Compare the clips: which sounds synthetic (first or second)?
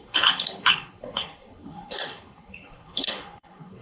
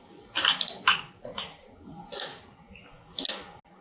first